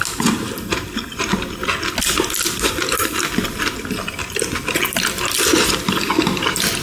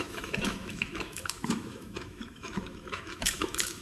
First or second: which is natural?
first